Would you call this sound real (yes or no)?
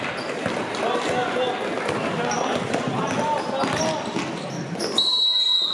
yes